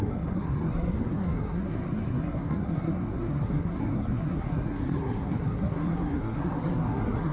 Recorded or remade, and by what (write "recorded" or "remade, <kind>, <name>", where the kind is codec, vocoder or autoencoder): remade, codec, SNAC